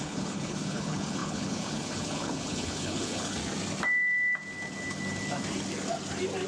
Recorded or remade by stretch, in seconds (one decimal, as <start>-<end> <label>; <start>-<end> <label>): 0.0-3.4 remade; 3.4-6.5 recorded